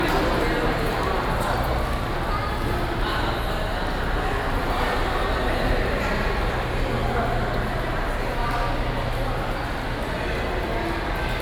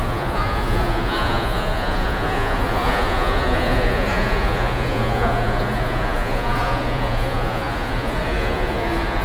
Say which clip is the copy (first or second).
second